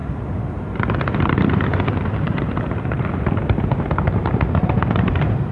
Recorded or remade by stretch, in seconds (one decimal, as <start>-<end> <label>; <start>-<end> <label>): 0.0-5.5 remade